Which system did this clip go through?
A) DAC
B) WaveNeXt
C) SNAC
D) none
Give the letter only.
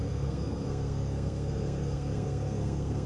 C